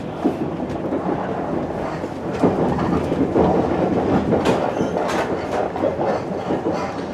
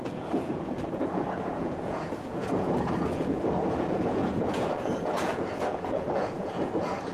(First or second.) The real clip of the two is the first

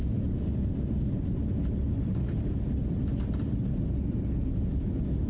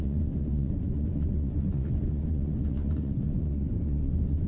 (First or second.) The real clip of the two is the first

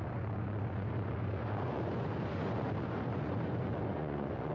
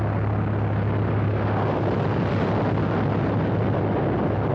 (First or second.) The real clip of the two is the second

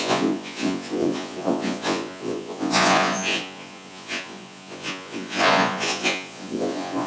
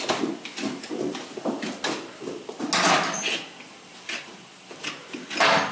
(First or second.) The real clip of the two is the second